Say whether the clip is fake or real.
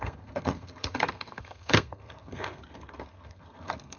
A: fake